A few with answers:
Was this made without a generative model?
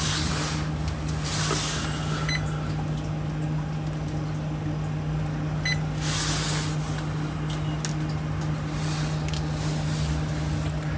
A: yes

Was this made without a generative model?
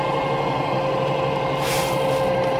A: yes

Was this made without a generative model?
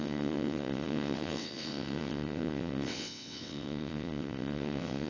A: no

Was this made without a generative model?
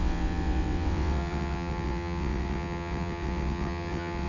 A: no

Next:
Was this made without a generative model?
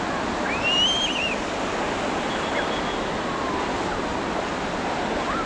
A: yes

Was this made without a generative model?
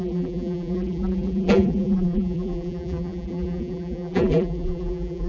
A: no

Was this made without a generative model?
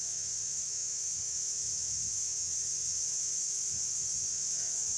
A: no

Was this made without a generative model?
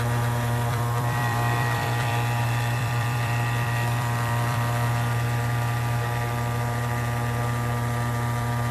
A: no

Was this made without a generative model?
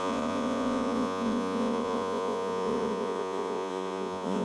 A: no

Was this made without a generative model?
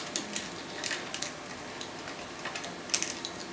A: yes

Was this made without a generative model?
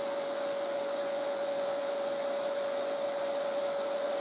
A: no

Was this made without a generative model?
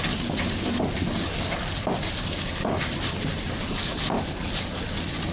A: yes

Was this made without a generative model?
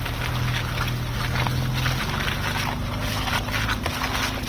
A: yes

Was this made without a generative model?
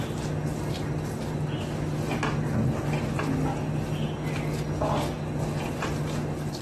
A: yes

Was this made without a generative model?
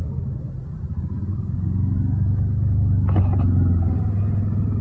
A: yes